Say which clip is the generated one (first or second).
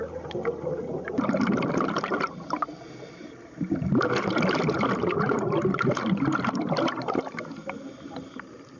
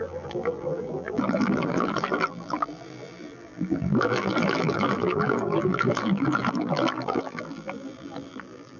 second